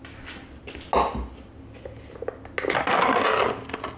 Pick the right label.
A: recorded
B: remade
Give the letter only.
A